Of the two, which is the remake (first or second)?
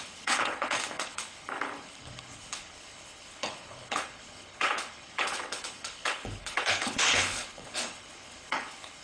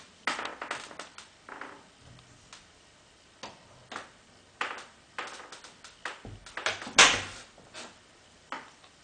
first